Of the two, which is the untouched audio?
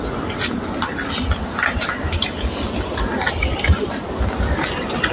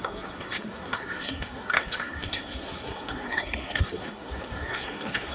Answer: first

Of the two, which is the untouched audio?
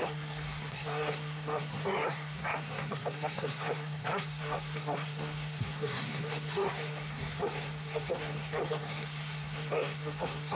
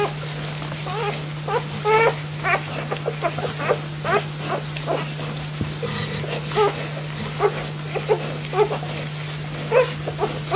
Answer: second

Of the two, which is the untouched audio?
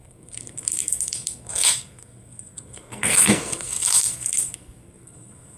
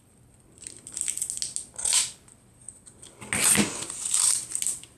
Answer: second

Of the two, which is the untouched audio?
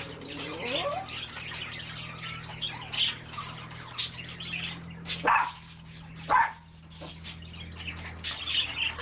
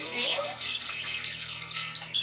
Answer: first